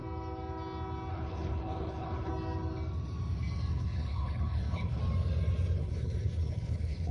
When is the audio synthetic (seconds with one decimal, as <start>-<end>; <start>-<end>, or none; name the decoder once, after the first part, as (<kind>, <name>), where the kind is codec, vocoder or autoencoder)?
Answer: 1.1-2.3 (codec, HILCodec); 3.7-5.0; 5.8-7.1